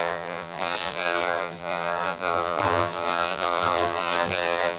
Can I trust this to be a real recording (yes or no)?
no